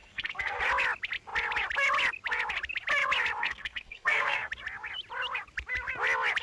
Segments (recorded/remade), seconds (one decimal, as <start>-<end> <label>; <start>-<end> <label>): 0.0-0.6 remade; 0.6-3.4 recorded; 3.4-4.5 remade; 4.5-6.4 recorded